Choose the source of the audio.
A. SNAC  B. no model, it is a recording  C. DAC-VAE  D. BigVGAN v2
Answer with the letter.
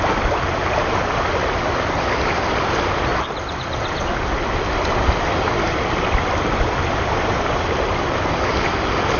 B